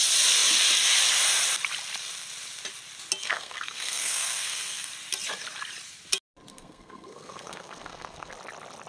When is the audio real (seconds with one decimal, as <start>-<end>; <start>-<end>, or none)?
0.0-3.2; 4.9-6.5; 8.3-8.9